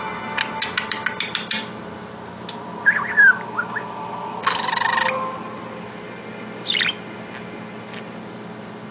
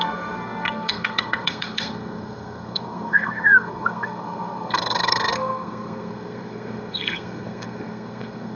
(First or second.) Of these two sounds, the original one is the first